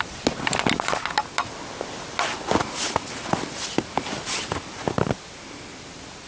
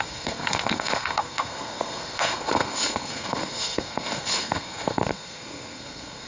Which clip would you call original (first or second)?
first